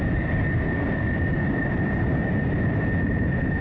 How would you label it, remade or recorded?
recorded